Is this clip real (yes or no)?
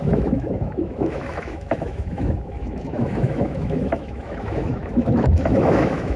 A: no